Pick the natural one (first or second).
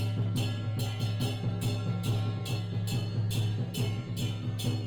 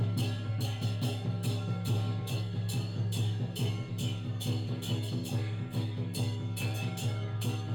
first